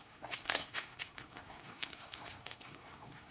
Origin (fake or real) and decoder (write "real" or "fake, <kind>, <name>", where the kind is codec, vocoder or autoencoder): fake, codec, SNAC